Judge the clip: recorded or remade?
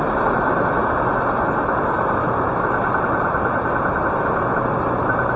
recorded